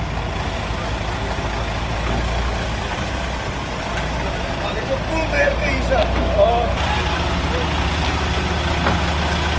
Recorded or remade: recorded